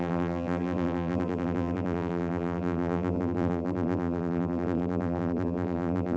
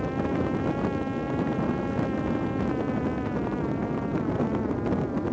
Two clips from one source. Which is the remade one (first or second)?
first